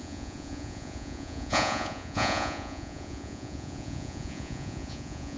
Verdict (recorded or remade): remade